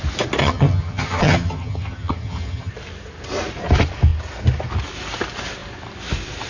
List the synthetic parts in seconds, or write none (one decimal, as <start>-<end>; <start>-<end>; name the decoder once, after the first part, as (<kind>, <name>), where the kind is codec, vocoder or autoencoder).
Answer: 0.4-2.7 (vocoder, HiFi-GAN)